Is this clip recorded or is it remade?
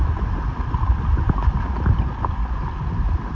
recorded